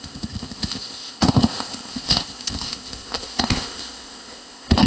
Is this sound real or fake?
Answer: fake